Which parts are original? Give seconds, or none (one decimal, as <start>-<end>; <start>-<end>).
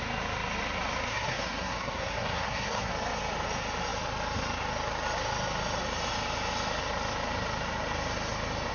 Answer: 0.0-1.1; 2.9-8.7